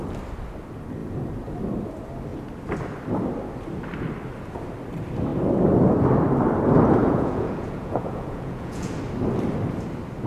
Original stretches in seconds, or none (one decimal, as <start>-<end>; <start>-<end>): 0.0-7.0; 8.9-10.3